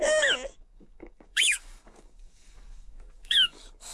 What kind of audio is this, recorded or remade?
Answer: remade